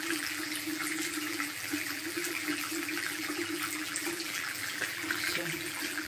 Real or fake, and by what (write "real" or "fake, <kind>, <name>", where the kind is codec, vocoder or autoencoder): fake, vocoder, BigVGAN v2